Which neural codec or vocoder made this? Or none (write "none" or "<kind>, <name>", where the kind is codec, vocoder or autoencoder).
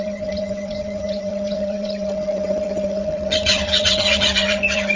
vocoder, HiFi-GAN